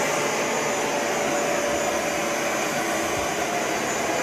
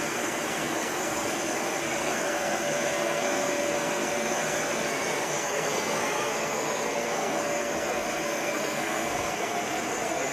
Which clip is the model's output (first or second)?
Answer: second